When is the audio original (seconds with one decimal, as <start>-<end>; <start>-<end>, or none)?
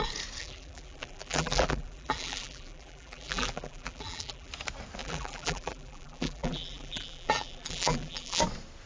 0.0-0.4; 4.5-5.0; 8.4-8.9